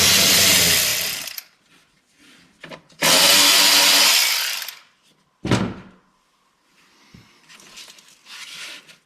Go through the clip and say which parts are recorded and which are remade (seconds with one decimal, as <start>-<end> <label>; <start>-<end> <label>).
0.0-0.9 recorded; 0.9-1.6 remade; 1.6-9.1 recorded